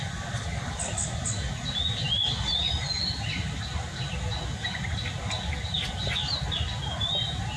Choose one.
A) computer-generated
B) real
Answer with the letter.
B